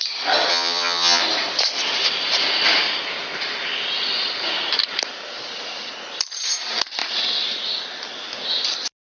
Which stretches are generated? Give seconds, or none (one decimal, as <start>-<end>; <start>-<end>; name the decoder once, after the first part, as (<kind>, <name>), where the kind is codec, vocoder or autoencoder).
0.5-1.2 (vocoder, HiFi-GAN)